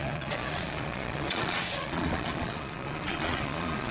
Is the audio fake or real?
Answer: fake